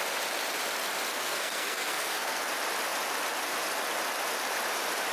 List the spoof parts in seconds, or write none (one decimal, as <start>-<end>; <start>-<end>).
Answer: 1.1-2.5